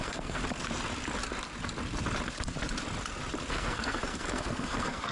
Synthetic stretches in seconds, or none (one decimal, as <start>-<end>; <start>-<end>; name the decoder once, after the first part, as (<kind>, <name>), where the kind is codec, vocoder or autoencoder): 0.0-0.4 (codec, SNAC); 3.5-5.1